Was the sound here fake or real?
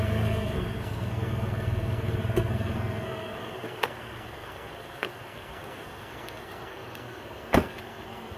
fake